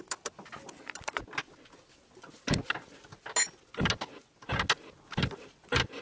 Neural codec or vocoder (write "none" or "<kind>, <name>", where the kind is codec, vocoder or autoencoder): none